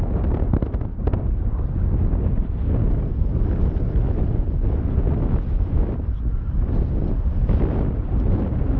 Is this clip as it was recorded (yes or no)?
yes